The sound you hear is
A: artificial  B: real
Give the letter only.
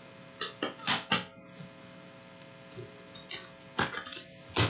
B